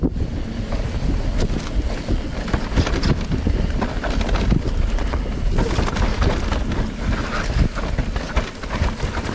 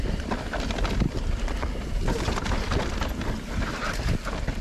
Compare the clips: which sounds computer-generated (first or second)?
second